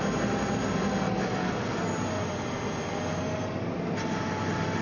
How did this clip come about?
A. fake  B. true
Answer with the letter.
B